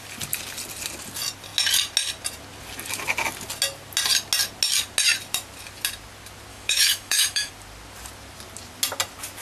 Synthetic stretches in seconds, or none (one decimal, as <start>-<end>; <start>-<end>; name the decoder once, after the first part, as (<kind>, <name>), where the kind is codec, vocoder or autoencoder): 6.5-7.5 (autoencoder, DAC-VAE)